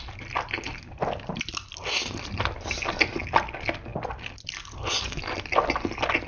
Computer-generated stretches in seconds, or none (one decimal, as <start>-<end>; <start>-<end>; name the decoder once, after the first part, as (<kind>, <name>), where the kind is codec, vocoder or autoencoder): 0.7-3.2 (vocoder, BigVGAN v2); 3.9-4.7